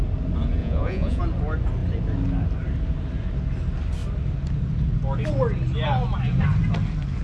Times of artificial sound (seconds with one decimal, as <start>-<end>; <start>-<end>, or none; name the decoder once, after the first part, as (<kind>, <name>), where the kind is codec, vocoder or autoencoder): 0.6-1.2 (vocoder, Vocos)